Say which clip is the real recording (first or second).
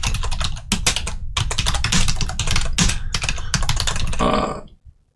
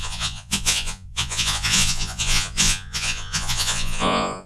first